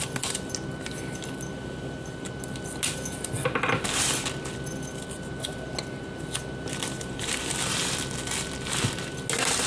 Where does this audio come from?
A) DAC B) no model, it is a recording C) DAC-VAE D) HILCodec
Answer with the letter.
B